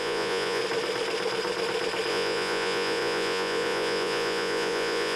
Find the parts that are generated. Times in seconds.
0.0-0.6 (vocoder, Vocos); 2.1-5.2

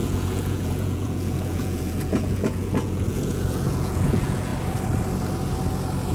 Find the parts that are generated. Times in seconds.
0.0-4.5 (vocoder, Vocos)

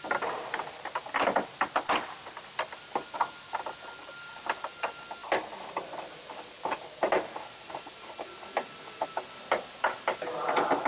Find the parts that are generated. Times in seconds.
none